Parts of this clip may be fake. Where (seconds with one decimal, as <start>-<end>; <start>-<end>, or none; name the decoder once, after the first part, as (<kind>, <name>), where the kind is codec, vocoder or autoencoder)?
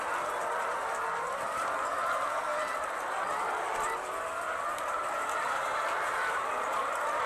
2.5-7.3 (vocoder, BigVGAN v2)